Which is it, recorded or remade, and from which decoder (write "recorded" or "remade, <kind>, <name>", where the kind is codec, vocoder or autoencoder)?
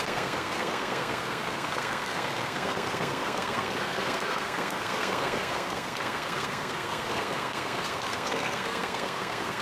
remade, codec, SNAC